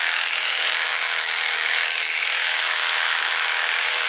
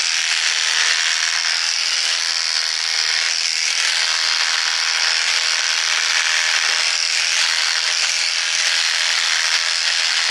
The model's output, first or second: first